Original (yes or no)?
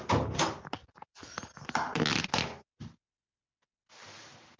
yes